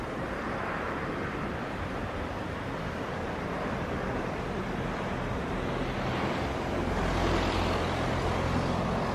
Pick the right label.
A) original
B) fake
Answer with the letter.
B